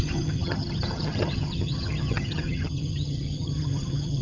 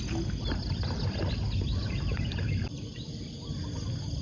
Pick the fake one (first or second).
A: first